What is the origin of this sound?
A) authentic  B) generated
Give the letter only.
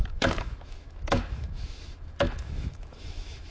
B